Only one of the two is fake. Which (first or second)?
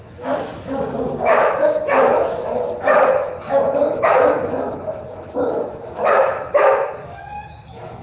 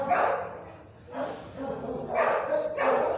first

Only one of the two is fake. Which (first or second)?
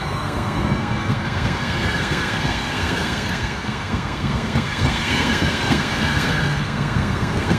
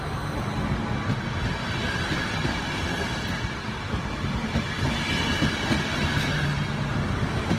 first